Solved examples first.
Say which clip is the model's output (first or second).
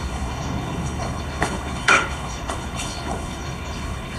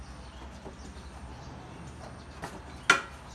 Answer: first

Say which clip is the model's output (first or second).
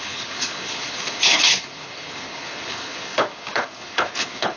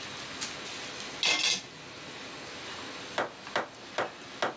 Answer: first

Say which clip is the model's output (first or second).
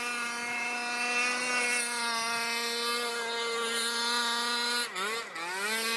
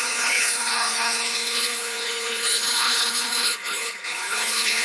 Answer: second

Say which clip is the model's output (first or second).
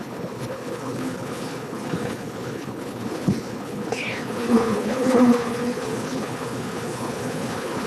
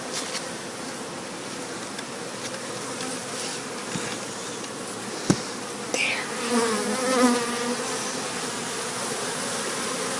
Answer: first